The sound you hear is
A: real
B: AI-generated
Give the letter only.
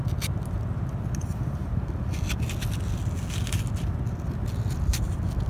A